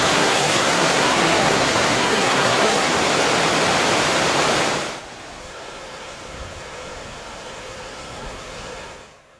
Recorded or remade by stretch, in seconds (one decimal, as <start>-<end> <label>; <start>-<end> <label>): 0.0-2.9 remade; 2.9-5.4 recorded; 5.4-9.4 remade